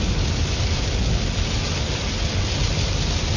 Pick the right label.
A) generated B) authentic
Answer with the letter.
B